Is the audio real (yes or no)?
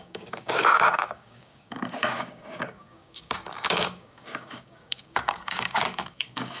no